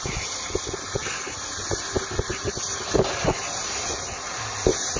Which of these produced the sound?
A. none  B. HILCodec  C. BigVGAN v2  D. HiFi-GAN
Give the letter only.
A